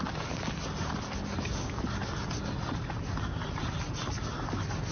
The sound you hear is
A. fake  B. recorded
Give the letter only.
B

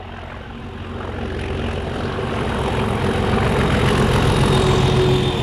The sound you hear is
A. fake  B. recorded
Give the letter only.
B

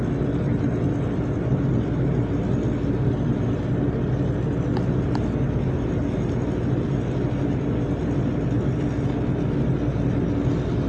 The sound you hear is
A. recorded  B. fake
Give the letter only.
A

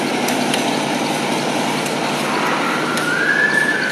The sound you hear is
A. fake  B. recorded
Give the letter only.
B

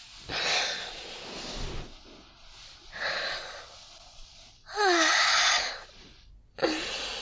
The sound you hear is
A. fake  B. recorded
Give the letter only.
B